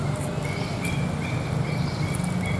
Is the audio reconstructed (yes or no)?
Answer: no